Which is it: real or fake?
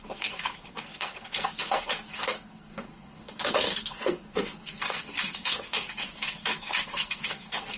fake